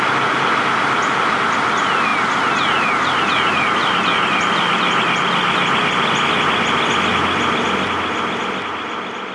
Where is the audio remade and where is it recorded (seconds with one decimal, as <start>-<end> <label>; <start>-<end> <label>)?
0.0-9.3 recorded